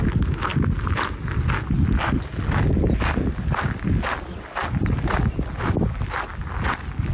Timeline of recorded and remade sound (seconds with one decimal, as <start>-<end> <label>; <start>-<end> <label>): 0.0-7.1 recorded